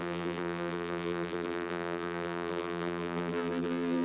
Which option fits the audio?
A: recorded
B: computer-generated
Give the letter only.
B